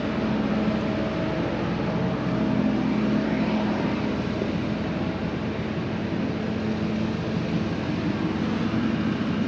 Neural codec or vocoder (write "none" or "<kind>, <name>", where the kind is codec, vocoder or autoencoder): none